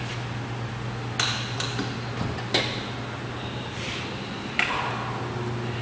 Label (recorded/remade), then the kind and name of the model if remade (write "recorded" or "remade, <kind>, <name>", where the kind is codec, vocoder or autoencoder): recorded